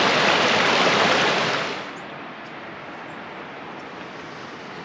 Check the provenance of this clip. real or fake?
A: real